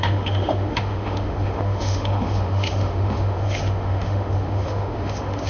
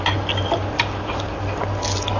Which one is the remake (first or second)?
first